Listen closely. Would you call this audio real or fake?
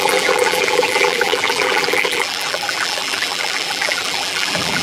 fake